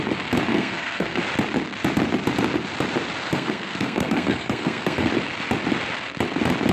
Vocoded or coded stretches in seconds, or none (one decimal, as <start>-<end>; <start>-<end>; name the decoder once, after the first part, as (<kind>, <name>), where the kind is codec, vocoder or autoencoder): 0.5-1.2 (codec, SNAC); 3.3-5.1